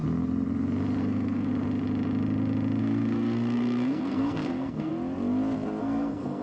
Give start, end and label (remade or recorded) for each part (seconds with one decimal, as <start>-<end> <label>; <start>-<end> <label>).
0.0-1.0 recorded; 1.0-1.5 remade; 1.5-2.8 recorded; 2.8-4.9 remade; 4.9-5.8 recorded; 5.8-6.4 remade

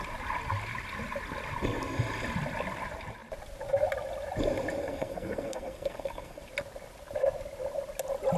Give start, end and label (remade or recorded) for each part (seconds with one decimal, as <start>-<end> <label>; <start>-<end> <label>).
0.0-4.8 recorded; 4.8-6.4 remade; 6.4-8.4 recorded